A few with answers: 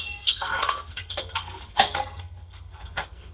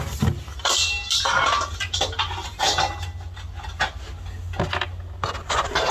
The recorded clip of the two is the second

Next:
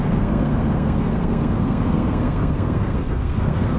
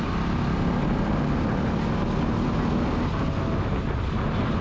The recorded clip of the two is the second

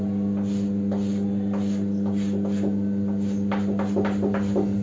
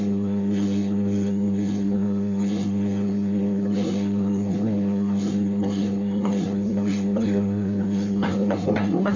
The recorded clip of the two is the first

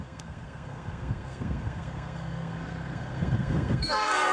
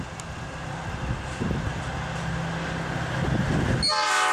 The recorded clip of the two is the second